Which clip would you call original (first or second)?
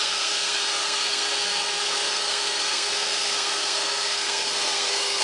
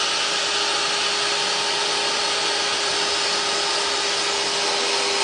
second